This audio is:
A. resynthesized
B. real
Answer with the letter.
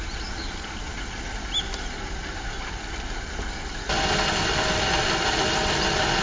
B